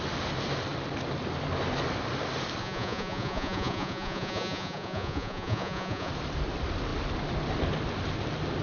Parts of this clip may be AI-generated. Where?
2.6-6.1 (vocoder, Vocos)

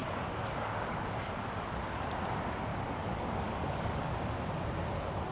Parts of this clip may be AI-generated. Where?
0.0-2.1 (codec, DAC); 2.7-4.5

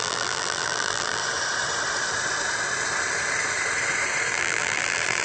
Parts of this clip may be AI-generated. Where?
0.0-1.2 (vocoder, BigVGAN v2); 4.3-5.2

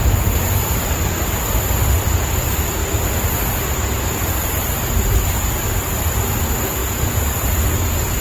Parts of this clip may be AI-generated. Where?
6.8-8.2 (vocoder, Vocos)

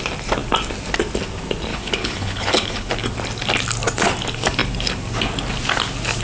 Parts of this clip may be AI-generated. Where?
1.7-2.9 (codec, HILCodec)